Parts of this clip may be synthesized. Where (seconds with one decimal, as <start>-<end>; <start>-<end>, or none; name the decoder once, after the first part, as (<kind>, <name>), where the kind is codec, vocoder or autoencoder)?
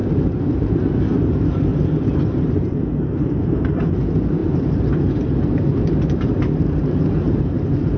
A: 0.7-1.7 (vocoder, BigVGAN v2); 2.3-8.0